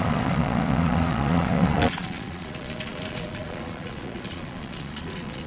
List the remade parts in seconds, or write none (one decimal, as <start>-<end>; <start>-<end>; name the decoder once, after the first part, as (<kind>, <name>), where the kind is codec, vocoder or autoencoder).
0.0-5.5 (vocoder, Vocos)